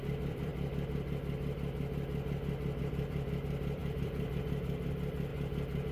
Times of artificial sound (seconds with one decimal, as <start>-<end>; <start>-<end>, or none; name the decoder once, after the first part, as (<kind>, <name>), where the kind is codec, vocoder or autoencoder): 0.0-0.5 (vocoder, BigVGAN v2); 2.8-5.3